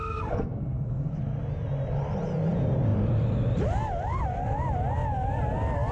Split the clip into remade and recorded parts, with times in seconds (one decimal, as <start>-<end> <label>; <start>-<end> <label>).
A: 0.0-1.1 remade; 1.1-5.9 recorded